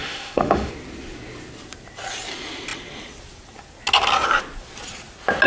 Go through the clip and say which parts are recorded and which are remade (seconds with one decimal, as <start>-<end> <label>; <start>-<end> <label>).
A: 0.0-0.7 remade; 0.7-5.5 recorded